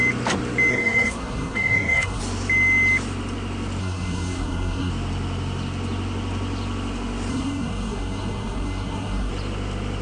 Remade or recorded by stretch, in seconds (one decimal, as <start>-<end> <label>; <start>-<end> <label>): 0.0-0.7 recorded; 0.7-2.2 remade; 2.2-3.8 recorded; 3.8-4.9 remade; 4.9-7.3 recorded; 7.3-9.3 remade; 9.3-10.0 recorded